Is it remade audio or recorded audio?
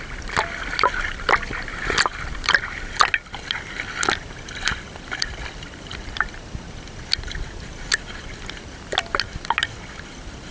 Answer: recorded